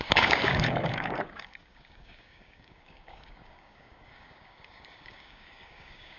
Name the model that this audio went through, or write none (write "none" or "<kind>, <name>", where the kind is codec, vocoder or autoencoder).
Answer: codec, DAC